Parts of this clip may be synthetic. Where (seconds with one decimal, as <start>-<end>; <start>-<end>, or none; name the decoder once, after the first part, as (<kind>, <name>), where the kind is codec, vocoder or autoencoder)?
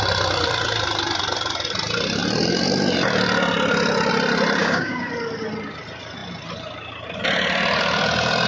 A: 4.6-5.1 (codec, DAC)